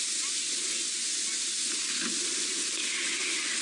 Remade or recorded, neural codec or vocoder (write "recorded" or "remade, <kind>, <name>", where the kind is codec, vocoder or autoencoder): recorded